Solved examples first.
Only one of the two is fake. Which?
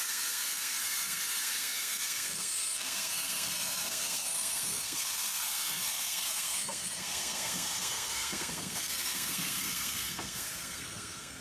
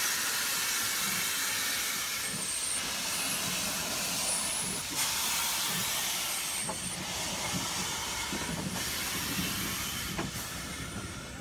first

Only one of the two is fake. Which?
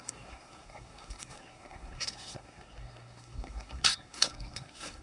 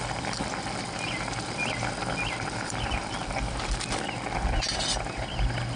first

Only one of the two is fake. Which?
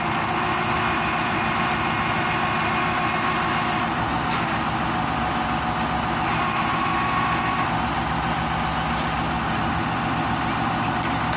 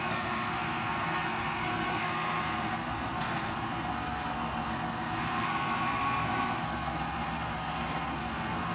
second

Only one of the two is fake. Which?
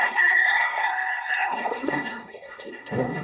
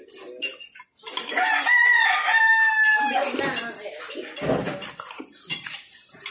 first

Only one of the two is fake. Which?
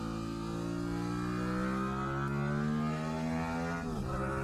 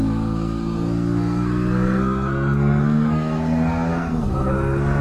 second